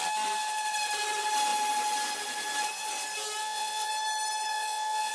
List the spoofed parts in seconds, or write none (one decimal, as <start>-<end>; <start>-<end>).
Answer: 3.4-3.9; 4.5-5.1